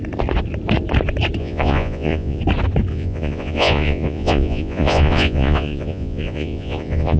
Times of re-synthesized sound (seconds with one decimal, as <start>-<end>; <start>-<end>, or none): 1.4-2.4; 2.9-7.2